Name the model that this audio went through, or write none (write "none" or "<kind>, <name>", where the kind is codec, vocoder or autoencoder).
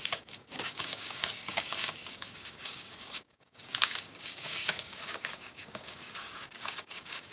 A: codec, DAC